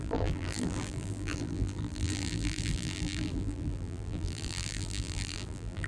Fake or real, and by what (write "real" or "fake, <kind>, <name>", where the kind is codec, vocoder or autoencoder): fake, vocoder, BigVGAN v2